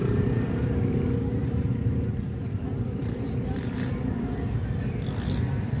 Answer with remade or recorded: remade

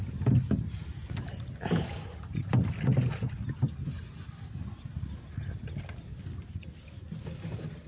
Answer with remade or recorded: recorded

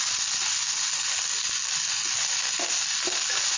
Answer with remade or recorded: recorded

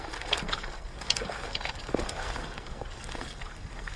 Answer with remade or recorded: remade